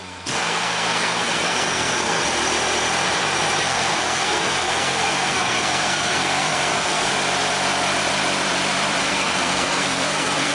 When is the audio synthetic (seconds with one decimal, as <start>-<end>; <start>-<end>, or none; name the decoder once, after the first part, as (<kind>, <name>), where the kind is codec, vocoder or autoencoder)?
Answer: 0.0-2.2 (codec, SNAC); 3.6-7.1; 9.0-10.5

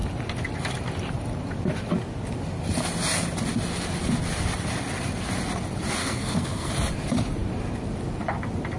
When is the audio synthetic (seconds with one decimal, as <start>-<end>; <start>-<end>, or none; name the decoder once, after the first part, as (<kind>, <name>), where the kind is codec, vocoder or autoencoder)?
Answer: 6.0-6.7 (codec, SNAC)

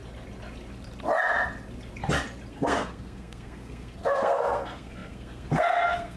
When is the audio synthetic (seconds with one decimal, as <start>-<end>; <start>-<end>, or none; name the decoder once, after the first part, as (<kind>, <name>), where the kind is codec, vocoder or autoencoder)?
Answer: 2.5-6.2 (codec, SNAC)

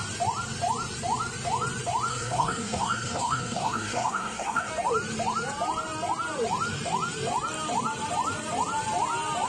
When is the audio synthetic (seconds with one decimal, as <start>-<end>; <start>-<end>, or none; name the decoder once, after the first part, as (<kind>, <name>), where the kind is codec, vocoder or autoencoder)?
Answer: 2.1-4.7 (codec, SNAC)

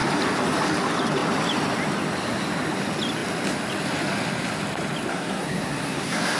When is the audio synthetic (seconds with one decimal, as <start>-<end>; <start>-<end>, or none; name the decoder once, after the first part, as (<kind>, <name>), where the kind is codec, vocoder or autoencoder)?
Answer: 5.1-6.4 (codec, SNAC)

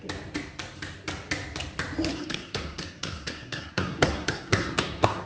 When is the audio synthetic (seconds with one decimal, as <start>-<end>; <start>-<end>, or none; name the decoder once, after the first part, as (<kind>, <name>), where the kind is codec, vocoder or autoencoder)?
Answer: 2.1-5.3 (codec, SNAC)

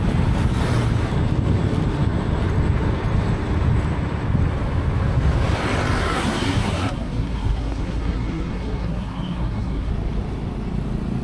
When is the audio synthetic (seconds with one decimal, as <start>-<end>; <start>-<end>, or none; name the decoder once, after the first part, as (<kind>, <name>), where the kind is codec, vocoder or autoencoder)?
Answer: 6.0-9.9 (codec, SNAC)

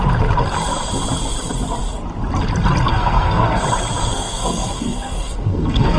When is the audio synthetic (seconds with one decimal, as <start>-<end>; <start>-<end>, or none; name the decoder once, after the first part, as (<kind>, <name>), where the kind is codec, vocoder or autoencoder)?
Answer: 2.9-3.6 (codec, SNAC); 4.0-6.0